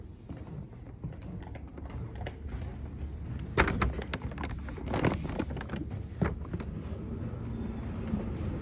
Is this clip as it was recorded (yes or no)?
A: yes